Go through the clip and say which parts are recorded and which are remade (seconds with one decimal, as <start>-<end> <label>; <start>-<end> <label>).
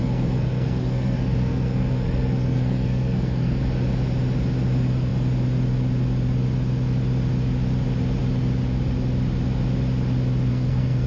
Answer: 0.0-3.6 remade; 3.6-10.5 recorded; 10.5-11.1 remade